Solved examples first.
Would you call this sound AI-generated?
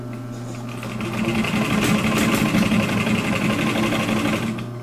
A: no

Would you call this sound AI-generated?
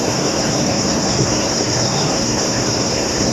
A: yes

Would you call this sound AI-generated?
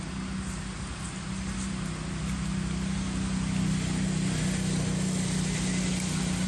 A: no